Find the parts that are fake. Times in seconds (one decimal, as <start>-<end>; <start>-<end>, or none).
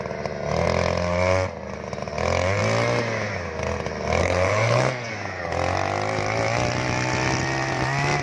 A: 4.2-5.1